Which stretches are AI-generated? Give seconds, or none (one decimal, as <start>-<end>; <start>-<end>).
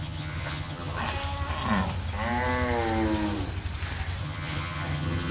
0.0-1.0; 4.2-5.3